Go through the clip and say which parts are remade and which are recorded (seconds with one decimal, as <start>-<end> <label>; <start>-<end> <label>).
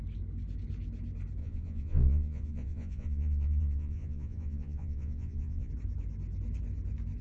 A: 0.0-1.4 recorded; 1.4-5.7 remade; 5.7-7.2 recorded